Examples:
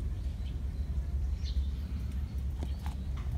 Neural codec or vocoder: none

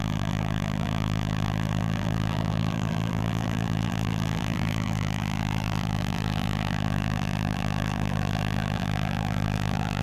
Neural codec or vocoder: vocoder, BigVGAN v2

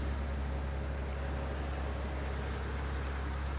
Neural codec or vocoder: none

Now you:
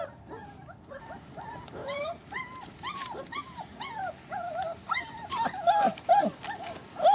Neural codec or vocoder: none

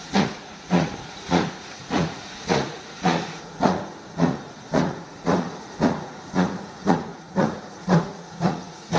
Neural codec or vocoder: vocoder, Vocos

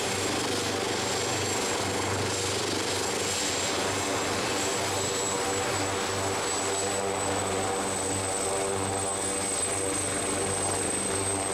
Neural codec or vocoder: none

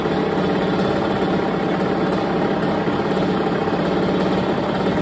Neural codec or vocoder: none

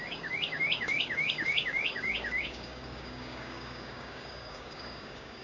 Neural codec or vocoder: codec, DAC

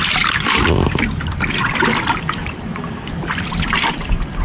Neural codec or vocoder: vocoder, BigVGAN v2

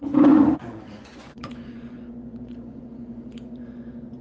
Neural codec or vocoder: vocoder, Vocos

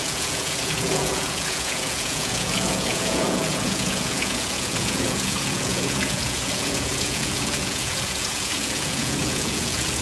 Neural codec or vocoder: vocoder, Vocos